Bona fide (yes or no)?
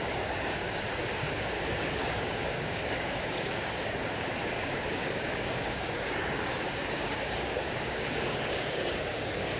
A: no